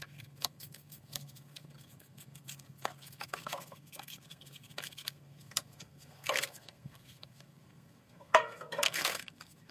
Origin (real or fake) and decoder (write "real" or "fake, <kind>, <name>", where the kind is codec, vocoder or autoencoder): fake, codec, SNAC